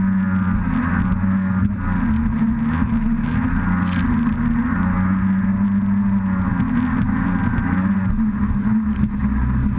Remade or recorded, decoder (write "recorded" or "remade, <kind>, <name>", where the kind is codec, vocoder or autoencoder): recorded